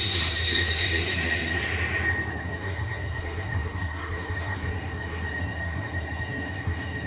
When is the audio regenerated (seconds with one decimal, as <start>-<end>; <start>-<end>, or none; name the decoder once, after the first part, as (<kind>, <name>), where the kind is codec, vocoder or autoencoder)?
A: 0.0-1.6 (codec, SNAC); 2.3-7.1